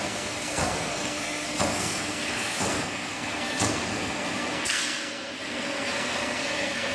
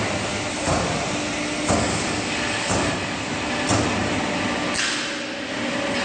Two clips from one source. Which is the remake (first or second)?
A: first